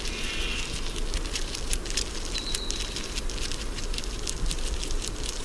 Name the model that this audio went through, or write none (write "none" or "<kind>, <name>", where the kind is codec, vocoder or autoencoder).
none